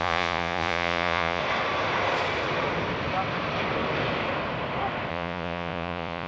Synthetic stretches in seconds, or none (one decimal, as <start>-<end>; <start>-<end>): 0.0-1.4; 5.1-6.3